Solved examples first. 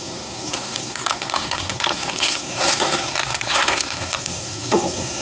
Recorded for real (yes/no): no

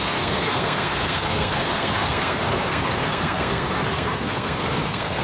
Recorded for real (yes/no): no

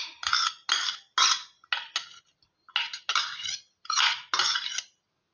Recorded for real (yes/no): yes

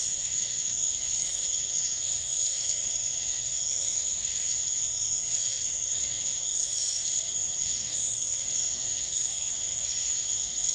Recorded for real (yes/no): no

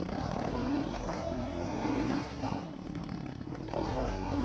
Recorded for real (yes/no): no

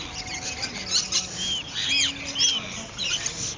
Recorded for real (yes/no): yes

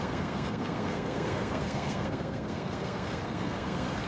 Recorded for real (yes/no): no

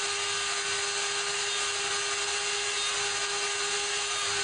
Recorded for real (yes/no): yes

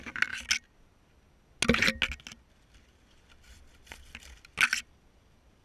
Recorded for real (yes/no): yes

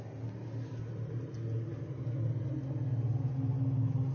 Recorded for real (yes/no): yes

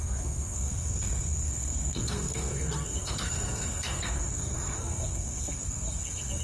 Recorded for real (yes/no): no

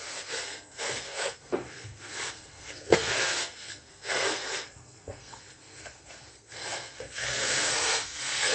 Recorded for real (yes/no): no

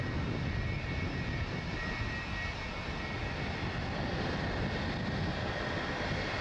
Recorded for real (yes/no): yes